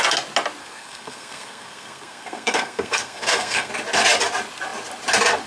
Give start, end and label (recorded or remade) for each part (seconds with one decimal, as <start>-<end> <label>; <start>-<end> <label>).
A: 0.0-0.6 recorded; 0.6-3.7 remade; 3.7-5.5 recorded